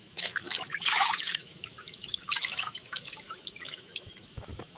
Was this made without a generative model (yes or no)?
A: no